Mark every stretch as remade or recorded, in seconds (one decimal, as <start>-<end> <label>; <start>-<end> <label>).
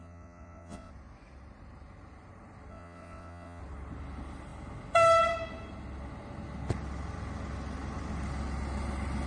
0.0-0.9 remade; 0.9-2.7 recorded; 2.7-3.6 remade; 3.6-9.3 recorded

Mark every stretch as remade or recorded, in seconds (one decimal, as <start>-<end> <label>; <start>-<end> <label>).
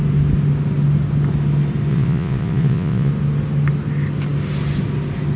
0.0-1.9 recorded; 1.9-3.1 remade; 3.1-5.4 recorded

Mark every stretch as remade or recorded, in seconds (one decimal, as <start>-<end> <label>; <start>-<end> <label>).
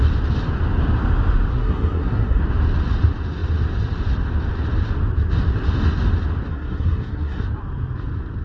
0.0-1.5 recorded; 1.5-2.4 remade; 2.4-6.5 recorded; 6.5-7.4 remade; 7.4-8.4 recorded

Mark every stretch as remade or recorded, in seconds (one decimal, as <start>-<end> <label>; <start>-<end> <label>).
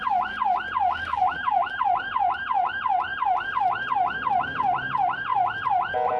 0.0-1.1 recorded; 1.1-1.8 remade; 1.8-6.2 recorded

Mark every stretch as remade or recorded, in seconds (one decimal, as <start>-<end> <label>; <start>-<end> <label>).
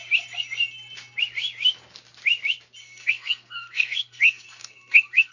0.0-2.8 recorded; 2.8-5.3 remade